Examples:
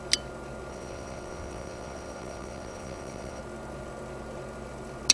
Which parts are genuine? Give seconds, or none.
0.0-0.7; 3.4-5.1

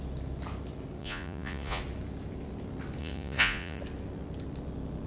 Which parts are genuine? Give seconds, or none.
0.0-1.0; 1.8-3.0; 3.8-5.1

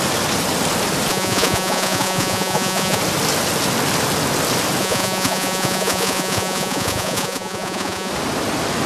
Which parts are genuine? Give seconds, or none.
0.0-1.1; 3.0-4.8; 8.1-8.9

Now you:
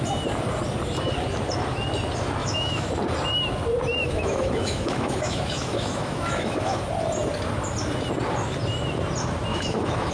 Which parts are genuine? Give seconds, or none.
0.0-2.4; 2.9-4.0; 6.8-9.5

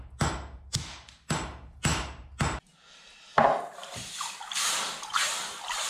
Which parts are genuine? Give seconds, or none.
0.0-5.9